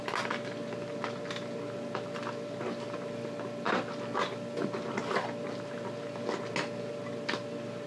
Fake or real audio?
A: real